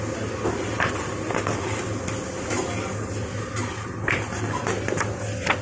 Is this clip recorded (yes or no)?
yes